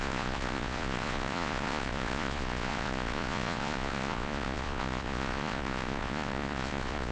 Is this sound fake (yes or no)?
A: yes